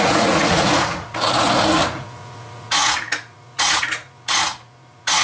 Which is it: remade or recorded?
remade